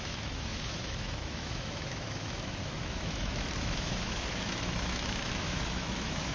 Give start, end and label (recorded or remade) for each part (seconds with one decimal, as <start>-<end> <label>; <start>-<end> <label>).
0.0-6.3 remade